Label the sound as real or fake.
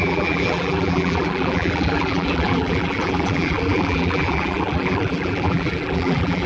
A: fake